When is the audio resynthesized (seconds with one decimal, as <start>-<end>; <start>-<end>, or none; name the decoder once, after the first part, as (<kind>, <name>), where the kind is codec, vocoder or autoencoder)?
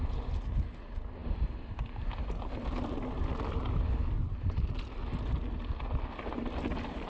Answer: none